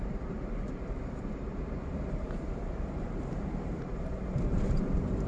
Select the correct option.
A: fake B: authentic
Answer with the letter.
A